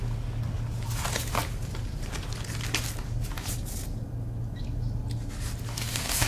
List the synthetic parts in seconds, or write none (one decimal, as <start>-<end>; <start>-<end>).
5.7-6.3